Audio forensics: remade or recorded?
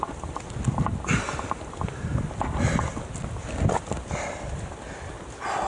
recorded